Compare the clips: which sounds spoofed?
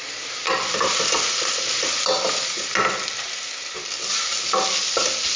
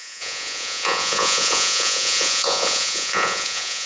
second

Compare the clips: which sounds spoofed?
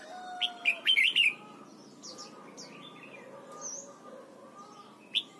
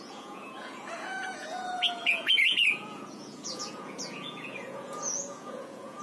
second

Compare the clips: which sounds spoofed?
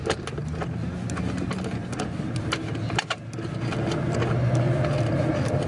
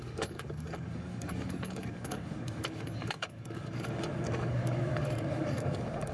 second